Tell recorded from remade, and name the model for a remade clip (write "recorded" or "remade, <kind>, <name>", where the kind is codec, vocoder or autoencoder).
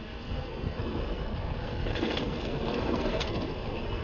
remade, codec, SNAC